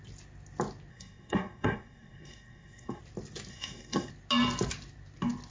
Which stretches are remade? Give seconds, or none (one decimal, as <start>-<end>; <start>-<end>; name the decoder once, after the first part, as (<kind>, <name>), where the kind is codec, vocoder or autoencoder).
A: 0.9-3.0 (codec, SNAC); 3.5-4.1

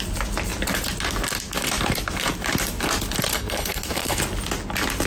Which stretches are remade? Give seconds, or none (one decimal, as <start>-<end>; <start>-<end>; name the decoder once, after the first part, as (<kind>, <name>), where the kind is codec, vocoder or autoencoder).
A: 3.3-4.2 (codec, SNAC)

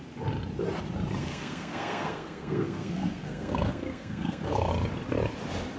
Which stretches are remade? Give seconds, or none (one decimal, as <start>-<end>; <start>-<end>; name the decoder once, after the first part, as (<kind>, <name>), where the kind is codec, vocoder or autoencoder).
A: 1.2-4.7 (codec, SNAC)